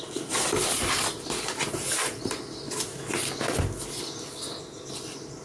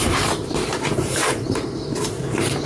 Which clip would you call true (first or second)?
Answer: first